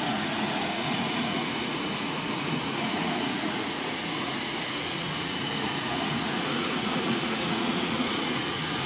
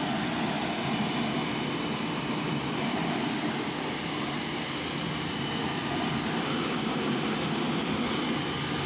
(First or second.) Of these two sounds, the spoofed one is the first